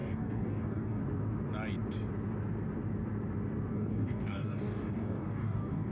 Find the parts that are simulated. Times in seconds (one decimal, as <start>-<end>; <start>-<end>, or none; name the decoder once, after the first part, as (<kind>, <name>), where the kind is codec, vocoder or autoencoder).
0.0-1.0 (codec, DAC); 3.7-5.9